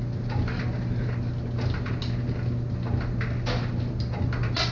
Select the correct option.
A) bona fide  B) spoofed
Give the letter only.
A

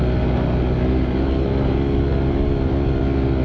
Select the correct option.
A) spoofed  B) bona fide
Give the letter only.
B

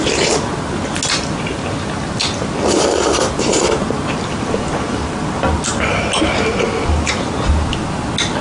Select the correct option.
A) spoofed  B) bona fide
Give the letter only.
B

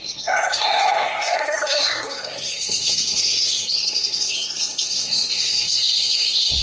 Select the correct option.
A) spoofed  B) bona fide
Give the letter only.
A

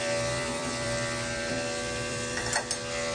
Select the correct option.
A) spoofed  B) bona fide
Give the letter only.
A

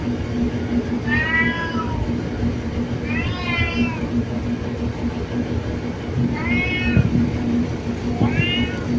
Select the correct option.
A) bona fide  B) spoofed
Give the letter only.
A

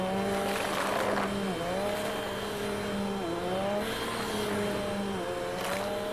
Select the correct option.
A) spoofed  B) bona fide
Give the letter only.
B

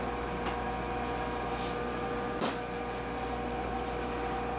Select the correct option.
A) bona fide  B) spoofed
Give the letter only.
A